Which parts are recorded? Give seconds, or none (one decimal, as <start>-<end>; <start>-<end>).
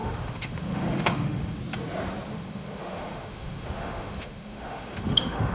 1.6-2.3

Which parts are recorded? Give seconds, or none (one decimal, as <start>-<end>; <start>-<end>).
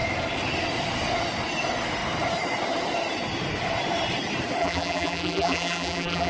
0.0-4.6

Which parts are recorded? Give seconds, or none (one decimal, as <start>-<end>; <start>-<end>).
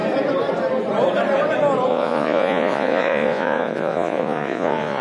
0.0-1.9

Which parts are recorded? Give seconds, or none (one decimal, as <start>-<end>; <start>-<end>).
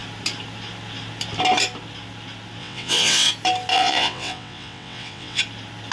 0.0-2.6; 3.3-3.7; 5.4-5.9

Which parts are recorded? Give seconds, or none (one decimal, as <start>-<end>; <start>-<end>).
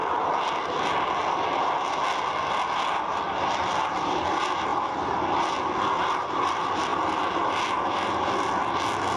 0.0-4.7; 5.5-9.2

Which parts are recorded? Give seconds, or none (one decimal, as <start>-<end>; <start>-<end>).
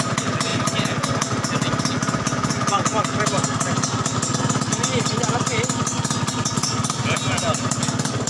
0.0-8.3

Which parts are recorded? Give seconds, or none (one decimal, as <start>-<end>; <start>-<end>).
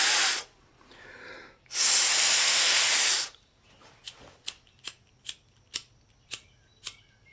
0.0-2.4; 2.9-7.3